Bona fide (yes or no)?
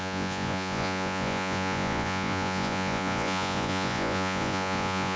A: no